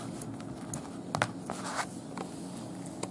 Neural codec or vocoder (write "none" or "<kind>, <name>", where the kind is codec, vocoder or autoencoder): none